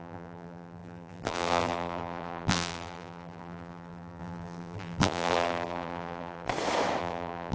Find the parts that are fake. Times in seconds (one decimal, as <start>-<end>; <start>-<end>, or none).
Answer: 0.0-6.5; 7.0-7.5